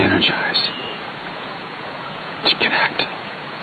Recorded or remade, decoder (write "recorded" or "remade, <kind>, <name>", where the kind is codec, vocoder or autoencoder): remade, vocoder, Vocos